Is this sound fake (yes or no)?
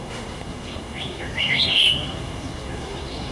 yes